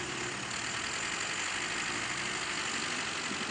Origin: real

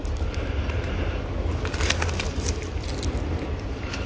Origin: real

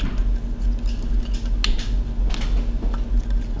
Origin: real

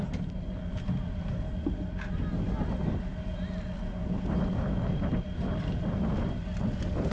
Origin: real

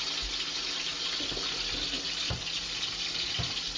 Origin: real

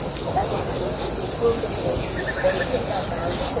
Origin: real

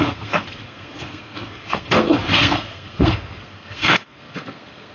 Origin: fake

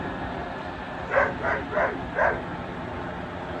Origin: real